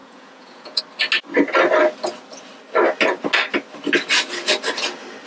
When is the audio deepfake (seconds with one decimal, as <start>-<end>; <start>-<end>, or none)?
0.0-0.8